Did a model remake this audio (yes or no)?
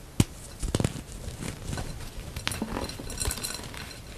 no